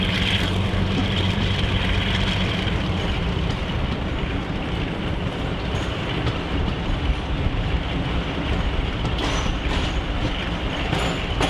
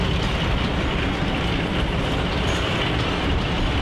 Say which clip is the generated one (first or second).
first